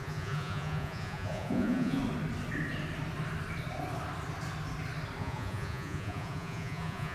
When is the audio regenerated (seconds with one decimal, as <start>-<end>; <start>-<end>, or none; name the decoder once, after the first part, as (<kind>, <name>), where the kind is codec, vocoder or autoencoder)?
0.0-2.0 (vocoder, Vocos); 5.2-7.1